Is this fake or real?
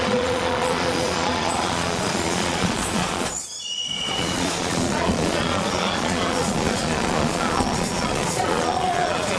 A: fake